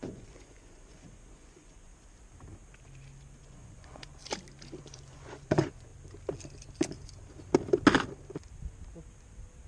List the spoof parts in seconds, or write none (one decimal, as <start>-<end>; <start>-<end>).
0.0-1.9; 3.4-4.2; 4.8-5.9